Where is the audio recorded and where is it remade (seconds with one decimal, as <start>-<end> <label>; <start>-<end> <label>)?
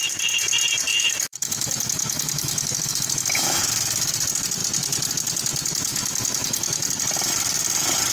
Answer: 0.0-0.9 recorded; 0.9-3.6 remade; 3.6-5.9 recorded; 5.9-6.9 remade; 6.9-8.1 recorded